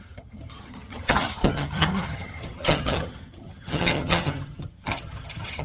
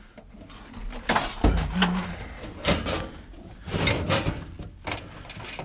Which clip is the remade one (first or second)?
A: first